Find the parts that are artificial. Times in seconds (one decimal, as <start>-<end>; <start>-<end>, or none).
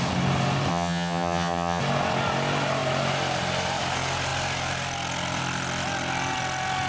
0.7-1.8